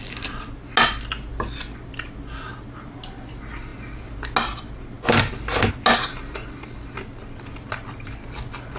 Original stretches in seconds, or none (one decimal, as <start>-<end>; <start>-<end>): 0.0-8.8